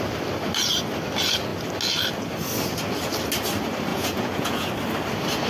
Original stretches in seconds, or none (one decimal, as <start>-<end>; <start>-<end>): 0.0-3.9; 4.7-5.5